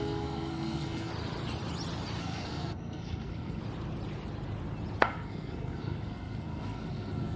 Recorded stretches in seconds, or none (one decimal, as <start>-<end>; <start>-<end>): 1.1-2.2; 3.6-5.0